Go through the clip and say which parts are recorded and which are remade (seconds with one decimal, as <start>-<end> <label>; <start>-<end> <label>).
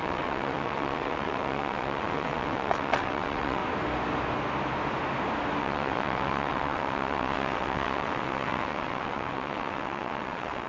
0.0-3.6 remade; 3.6-5.6 recorded; 5.6-10.7 remade